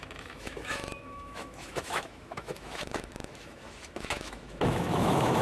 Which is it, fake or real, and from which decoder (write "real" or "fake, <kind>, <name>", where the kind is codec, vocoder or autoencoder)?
fake, autoencoder, DAC-VAE